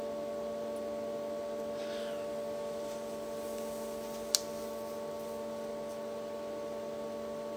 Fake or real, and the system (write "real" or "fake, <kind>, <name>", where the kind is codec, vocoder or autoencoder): real